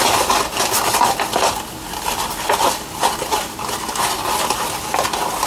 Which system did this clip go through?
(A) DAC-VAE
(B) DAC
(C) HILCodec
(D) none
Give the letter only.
D